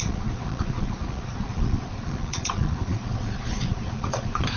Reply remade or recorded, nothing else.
remade